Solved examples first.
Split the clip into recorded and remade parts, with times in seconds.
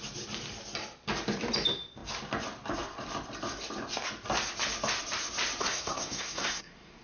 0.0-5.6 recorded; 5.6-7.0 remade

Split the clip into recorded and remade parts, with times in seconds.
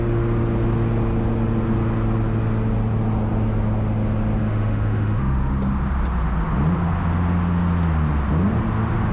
0.0-4.4 recorded; 4.4-5.5 remade; 5.5-9.1 recorded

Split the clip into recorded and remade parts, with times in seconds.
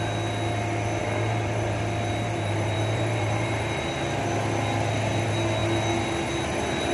0.0-1.0 recorded; 1.0-3.9 remade; 3.9-6.9 recorded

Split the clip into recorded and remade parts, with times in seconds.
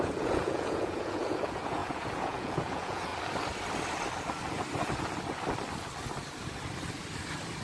0.0-3.1 remade; 3.1-7.6 recorded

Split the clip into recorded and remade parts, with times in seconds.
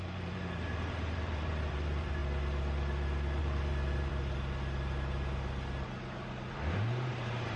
0.0-2.2 remade; 2.2-3.4 recorded; 3.4-4.1 remade; 4.1-7.1 recorded; 7.1-7.6 remade